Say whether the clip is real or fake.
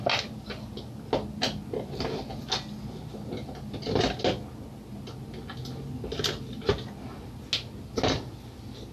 real